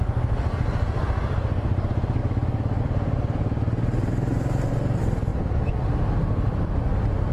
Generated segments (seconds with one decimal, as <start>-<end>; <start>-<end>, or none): 2.2-2.8

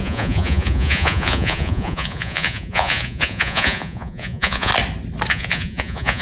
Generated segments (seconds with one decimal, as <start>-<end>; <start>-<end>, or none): 0.0-4.7; 5.3-6.2

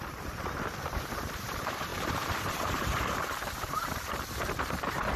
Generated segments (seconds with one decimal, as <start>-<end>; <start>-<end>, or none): 0.0-5.2

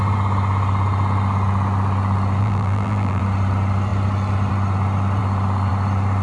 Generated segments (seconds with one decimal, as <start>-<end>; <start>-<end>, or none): 2.4-3.2

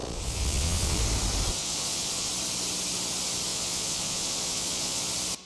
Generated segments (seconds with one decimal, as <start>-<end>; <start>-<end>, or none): 0.0-1.0; 1.6-2.3; 3.5-5.1

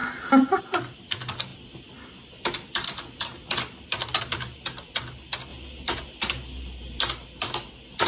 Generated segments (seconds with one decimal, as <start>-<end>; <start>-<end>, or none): none

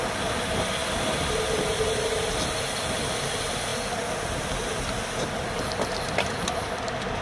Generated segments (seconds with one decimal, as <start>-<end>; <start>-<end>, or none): none